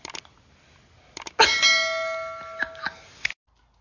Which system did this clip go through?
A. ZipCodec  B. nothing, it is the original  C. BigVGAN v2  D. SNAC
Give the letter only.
B